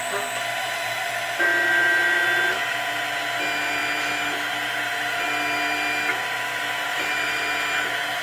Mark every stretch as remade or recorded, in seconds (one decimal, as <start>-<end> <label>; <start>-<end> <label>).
0.0-0.5 recorded; 0.5-1.2 remade; 1.2-6.9 recorded; 6.9-7.4 remade; 7.4-8.2 recorded